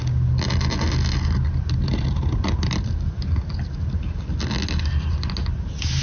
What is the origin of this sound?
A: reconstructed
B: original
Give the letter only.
B